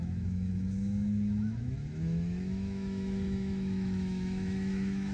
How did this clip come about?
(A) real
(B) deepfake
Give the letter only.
B